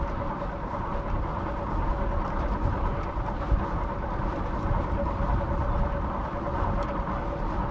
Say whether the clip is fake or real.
real